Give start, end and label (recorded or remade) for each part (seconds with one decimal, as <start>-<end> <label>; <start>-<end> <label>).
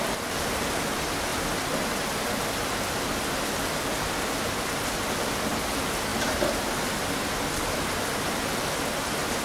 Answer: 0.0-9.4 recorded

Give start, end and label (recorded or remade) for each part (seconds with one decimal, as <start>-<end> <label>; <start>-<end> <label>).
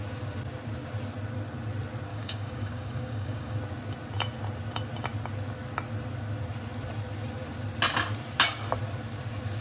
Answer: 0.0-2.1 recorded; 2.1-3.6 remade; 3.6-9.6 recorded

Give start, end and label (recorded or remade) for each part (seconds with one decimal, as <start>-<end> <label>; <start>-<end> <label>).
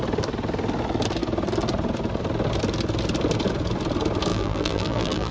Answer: 0.0-4.3 recorded; 4.3-5.3 remade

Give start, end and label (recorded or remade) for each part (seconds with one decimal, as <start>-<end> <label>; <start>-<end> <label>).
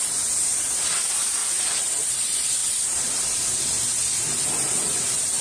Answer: 0.0-5.4 recorded